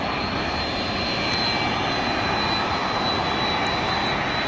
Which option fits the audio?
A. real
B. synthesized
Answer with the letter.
A